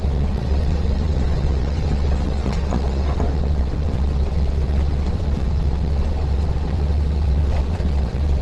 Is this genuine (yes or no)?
no